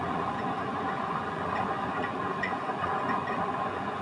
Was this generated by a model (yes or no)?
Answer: yes